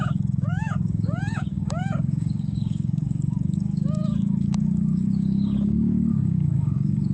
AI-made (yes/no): yes